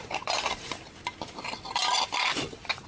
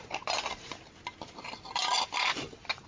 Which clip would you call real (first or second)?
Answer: second